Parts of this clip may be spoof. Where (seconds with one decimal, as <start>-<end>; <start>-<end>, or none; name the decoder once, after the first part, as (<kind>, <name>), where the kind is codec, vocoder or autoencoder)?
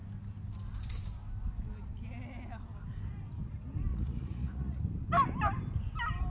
3.9-4.8 (vocoder, Vocos)